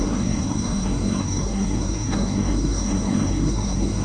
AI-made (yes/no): yes